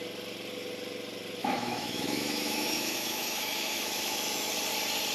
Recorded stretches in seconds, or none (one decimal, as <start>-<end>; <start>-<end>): 0.0-1.4; 4.5-5.1